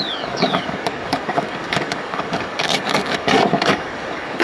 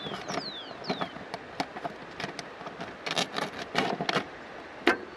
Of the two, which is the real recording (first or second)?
second